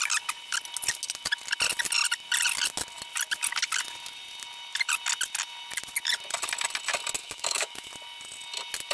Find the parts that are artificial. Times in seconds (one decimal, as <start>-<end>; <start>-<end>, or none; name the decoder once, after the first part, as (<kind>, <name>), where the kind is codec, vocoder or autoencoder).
7.2-7.9 (autoencoder, DAC-VAE)